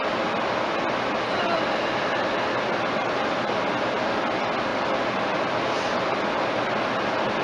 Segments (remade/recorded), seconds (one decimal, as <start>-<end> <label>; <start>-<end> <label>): 0.0-4.7 recorded; 4.7-5.8 remade; 5.8-7.4 recorded